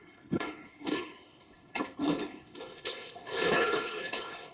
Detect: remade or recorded remade